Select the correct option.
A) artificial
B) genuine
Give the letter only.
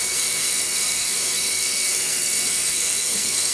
A